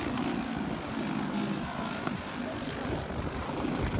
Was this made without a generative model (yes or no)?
yes